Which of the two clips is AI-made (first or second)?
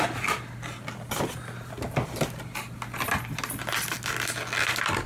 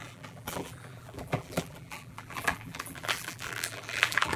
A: second